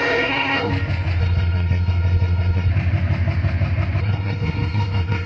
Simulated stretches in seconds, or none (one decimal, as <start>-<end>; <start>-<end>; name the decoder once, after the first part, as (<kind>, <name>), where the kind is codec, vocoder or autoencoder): 0.0-0.7 (codec, SNAC); 1.2-2.7; 4.0-5.3